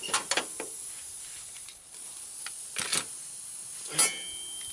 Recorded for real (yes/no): yes